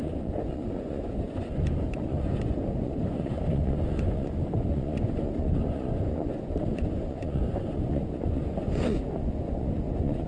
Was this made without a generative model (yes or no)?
no